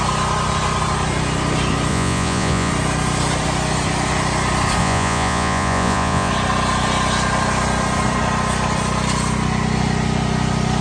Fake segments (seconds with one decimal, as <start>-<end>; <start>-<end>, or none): 1.9-2.7; 4.8-6.3